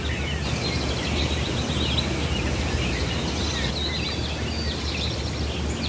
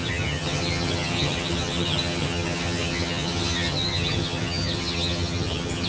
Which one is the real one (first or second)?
first